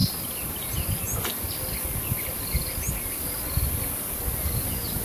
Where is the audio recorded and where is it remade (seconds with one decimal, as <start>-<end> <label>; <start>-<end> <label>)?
0.0-5.0 recorded